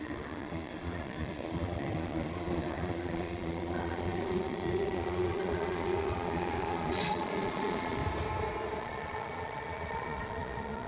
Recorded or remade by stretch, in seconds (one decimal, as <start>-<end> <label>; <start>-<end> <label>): 0.0-8.0 remade; 8.0-8.8 recorded; 8.8-10.9 remade